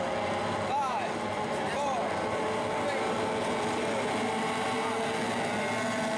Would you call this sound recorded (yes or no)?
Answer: yes